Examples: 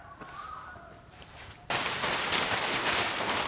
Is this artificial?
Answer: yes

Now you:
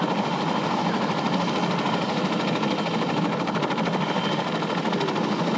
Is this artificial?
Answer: no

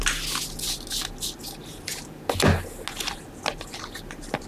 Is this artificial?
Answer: no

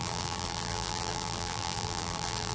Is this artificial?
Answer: yes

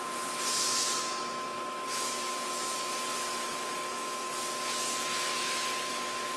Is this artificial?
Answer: yes